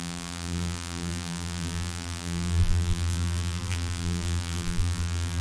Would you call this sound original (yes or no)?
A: no